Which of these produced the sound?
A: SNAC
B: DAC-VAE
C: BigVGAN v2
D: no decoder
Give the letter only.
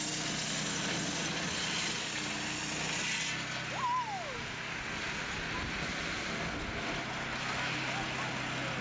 D